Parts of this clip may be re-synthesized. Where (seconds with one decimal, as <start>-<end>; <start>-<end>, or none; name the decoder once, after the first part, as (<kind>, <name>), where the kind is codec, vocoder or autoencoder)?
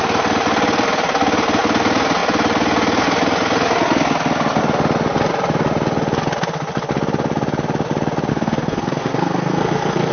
8.3-10.1 (codec, SNAC)